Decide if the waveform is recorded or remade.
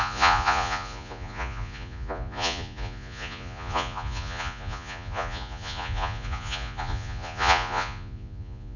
remade